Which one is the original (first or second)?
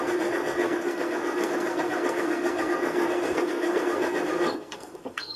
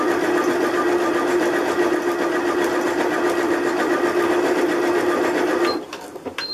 second